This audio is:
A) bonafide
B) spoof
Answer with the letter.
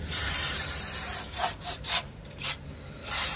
B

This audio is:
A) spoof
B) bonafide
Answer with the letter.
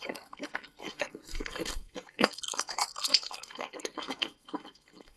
A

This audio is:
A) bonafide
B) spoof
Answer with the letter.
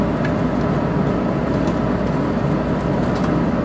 A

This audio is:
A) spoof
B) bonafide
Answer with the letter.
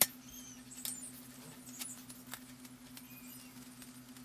B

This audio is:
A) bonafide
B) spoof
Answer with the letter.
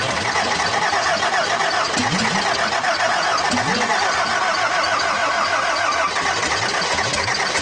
A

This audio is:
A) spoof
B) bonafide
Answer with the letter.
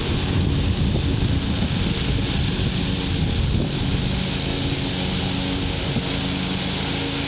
B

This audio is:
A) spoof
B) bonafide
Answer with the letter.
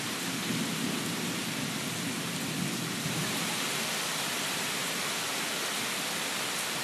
B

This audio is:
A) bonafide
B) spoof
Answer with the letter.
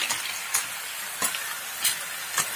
A